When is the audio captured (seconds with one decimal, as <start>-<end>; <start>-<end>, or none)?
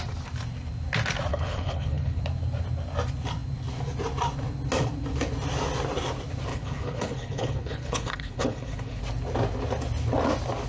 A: 0.0-1.3; 2.2-6.5; 9.0-10.7